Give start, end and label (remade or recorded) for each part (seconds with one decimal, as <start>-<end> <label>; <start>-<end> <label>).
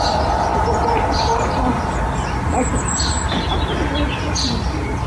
0.0-5.1 recorded